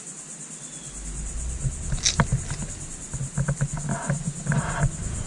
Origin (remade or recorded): recorded